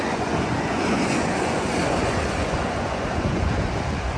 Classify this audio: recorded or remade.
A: remade